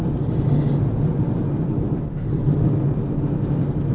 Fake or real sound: real